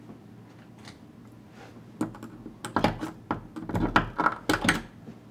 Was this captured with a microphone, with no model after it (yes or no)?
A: yes